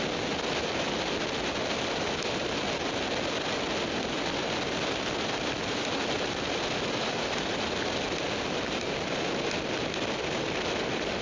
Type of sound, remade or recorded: recorded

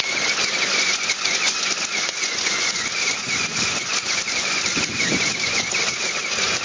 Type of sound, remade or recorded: remade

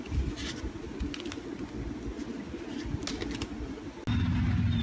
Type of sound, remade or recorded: recorded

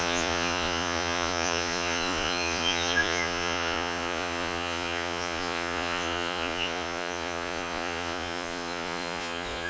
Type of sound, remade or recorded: remade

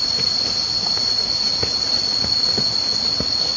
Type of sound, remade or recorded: recorded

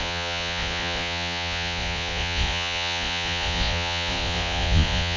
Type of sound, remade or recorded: remade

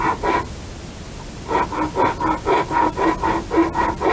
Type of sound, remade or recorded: recorded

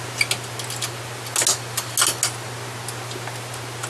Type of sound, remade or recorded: recorded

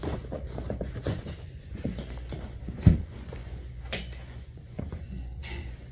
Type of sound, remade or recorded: remade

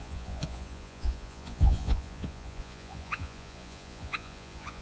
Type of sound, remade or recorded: remade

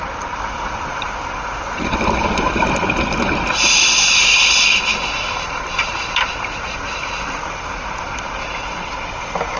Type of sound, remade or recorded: recorded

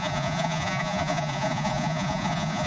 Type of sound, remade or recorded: remade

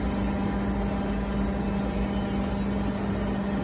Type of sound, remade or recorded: recorded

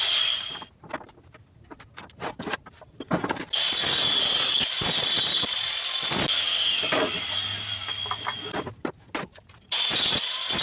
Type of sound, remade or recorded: recorded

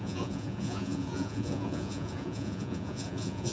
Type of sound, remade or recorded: remade